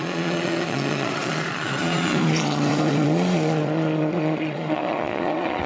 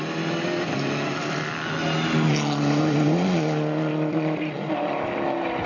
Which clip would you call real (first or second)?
second